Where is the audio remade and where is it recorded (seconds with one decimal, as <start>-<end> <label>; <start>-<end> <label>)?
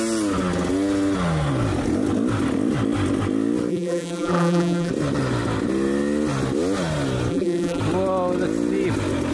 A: 0.0-3.7 recorded; 3.7-4.9 remade; 4.9-7.3 recorded; 7.3-7.8 remade; 7.8-9.3 recorded